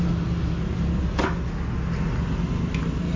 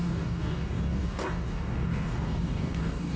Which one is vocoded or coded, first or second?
second